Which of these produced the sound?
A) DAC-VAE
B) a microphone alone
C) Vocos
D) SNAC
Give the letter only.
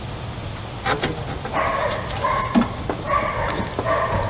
B